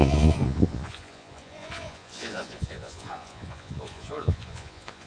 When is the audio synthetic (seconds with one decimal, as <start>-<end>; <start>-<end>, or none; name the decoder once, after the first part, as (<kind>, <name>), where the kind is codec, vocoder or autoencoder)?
0.0-5.1 (vocoder, Vocos)